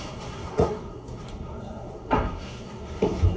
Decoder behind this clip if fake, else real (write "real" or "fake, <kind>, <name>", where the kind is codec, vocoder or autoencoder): fake, codec, SNAC